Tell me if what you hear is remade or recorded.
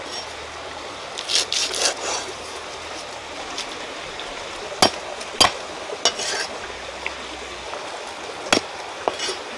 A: recorded